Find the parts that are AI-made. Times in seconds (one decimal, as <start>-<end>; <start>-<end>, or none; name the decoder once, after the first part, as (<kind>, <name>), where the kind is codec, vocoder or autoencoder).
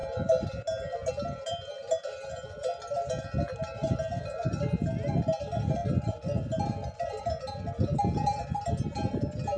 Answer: none